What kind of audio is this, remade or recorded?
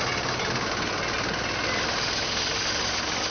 recorded